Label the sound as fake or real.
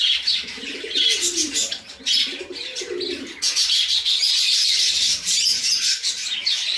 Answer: real